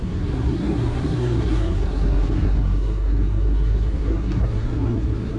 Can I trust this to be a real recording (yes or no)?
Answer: no